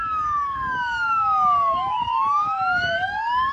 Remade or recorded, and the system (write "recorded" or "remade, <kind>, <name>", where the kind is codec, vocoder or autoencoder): remade, codec, DAC